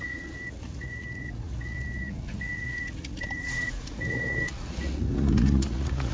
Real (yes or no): no